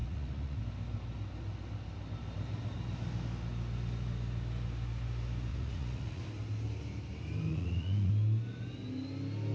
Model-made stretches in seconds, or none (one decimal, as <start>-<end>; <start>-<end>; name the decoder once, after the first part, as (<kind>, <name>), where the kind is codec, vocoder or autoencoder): 0.0-0.6 (vocoder, Vocos); 5.5-6.2; 7.5-8.1